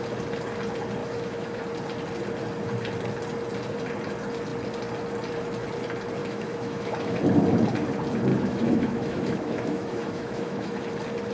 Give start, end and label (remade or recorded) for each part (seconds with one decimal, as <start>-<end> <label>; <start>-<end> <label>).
0.0-1.0 recorded; 1.0-1.6 remade; 1.6-6.2 recorded; 6.2-7.2 remade; 7.2-8.3 recorded; 8.3-10.9 remade; 10.9-11.3 recorded